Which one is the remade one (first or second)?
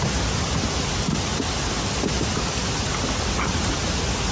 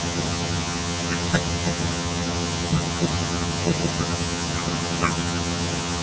second